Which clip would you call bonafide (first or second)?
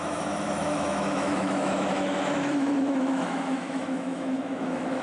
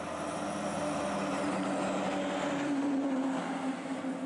second